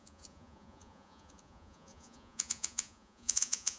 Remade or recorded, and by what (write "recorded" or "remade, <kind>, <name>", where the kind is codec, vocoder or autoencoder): remade, vocoder, Vocos